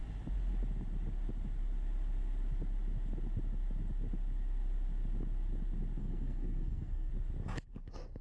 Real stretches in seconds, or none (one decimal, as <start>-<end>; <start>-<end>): 0.0-6.0; 7.1-8.2